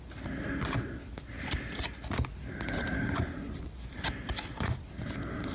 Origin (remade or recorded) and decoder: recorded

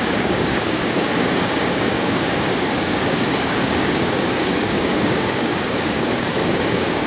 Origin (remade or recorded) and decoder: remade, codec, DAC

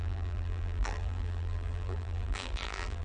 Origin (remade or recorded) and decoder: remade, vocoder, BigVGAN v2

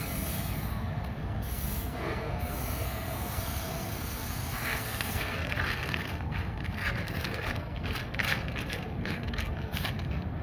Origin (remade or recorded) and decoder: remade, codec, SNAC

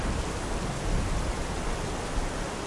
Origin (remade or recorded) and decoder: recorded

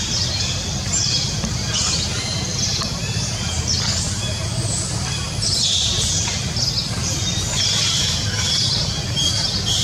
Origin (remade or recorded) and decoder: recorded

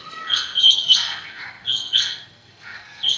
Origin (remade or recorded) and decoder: remade, codec, SNAC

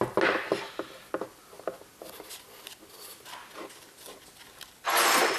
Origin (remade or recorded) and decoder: recorded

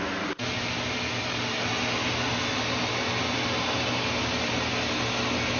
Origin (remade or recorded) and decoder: recorded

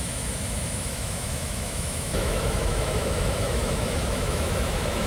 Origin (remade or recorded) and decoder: remade, autoencoder, DAC-VAE